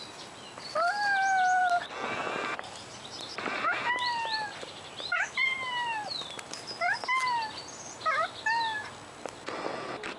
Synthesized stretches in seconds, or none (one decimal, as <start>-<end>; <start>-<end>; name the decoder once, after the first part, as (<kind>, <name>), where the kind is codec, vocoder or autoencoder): none